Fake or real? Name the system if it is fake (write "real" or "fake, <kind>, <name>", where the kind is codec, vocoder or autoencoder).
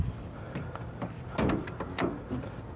real